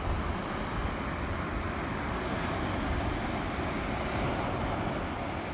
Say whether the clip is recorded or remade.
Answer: recorded